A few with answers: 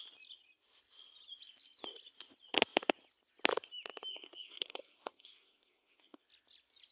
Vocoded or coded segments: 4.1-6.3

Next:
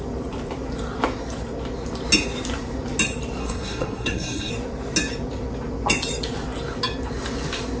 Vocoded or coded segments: 3.4-4.5

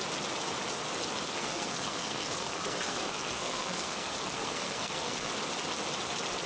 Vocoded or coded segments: 1.4-5.3

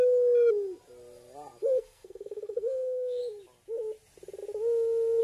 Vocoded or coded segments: 1.6-3.2

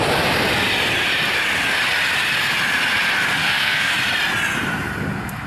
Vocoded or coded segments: 3.4-3.9

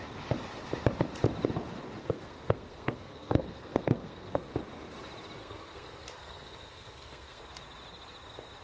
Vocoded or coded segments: 2.0-4.5; 5.4-7.4

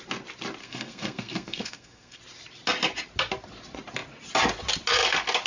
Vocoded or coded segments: 0.6-2.2

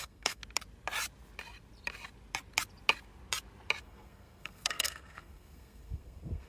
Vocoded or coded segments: 0.0-0.4; 3.8-6.5